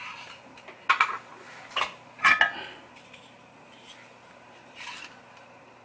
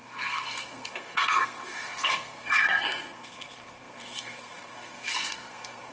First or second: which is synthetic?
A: second